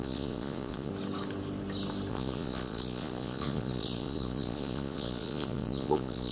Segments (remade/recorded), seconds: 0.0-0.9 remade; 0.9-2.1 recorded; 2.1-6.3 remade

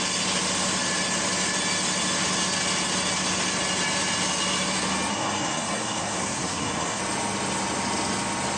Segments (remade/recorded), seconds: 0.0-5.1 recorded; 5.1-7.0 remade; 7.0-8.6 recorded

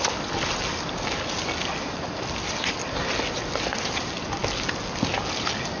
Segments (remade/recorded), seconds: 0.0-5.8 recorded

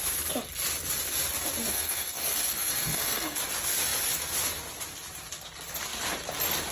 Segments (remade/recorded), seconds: 0.0-1.7 recorded; 1.7-3.4 remade; 3.4-6.7 recorded

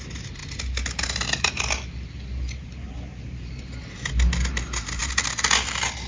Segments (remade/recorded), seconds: 0.0-6.1 recorded

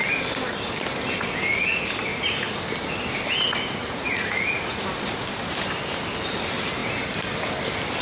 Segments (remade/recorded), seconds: 0.0-2.1 recorded; 2.1-2.6 remade; 2.6-3.8 recorded; 3.8-4.8 remade; 4.8-8.0 recorded